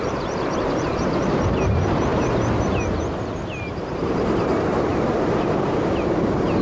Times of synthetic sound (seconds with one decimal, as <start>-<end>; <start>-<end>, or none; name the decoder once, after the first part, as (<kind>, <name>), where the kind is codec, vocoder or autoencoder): 0.0-2.1 (vocoder, BigVGAN v2); 4.0-4.9; 6.0-6.6